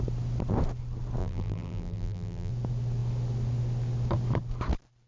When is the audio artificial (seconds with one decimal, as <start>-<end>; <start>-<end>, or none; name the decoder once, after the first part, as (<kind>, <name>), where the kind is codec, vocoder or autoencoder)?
1.2-2.5 (vocoder, BigVGAN v2)